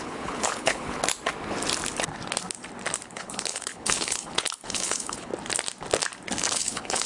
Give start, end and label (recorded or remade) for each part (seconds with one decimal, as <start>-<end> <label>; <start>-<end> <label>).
0.0-1.0 remade; 1.0-3.1 recorded; 3.1-5.3 remade; 5.3-6.5 recorded; 6.5-7.1 remade